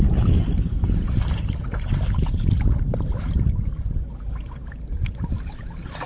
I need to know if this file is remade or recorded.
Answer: remade